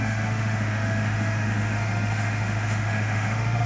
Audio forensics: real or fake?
fake